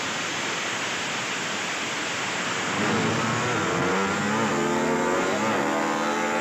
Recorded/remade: recorded